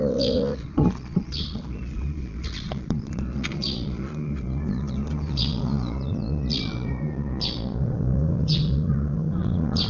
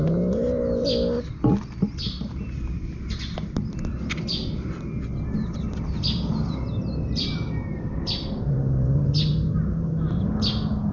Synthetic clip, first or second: first